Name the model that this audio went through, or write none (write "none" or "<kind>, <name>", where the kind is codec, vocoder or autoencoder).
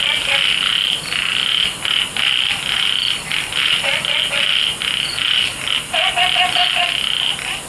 none